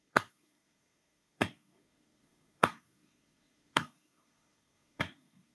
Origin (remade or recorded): remade